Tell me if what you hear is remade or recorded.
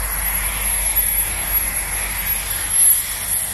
recorded